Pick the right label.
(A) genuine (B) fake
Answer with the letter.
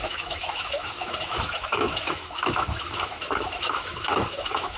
B